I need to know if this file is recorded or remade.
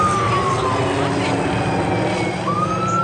recorded